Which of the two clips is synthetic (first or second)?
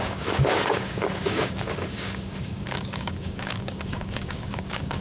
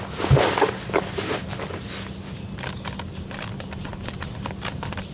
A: first